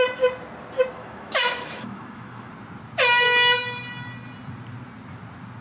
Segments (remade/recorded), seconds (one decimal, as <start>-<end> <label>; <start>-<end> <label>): 0.0-0.9 recorded; 0.9-2.5 remade; 2.5-5.6 recorded